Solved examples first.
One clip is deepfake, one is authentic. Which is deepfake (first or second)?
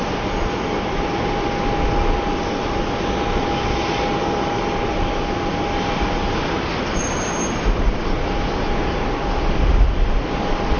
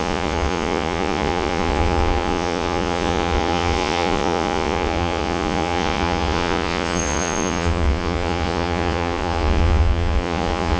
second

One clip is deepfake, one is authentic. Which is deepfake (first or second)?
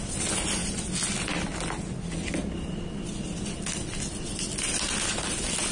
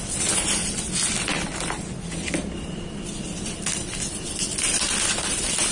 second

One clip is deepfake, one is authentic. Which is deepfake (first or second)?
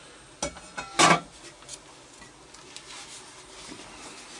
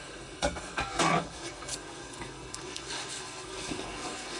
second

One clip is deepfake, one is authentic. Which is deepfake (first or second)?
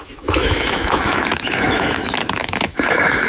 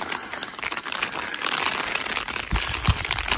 first